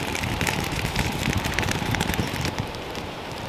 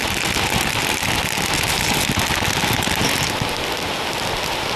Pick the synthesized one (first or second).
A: first